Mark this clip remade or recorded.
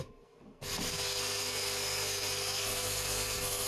remade